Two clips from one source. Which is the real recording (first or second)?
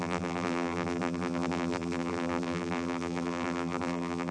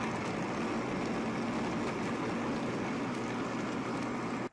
second